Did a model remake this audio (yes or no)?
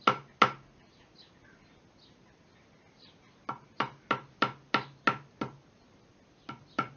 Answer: no